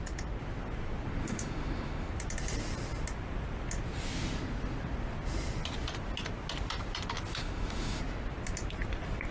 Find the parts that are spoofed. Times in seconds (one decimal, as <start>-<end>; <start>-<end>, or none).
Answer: 1.2-2.1; 7.4-8.0